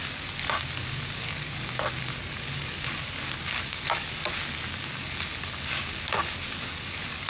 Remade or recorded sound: remade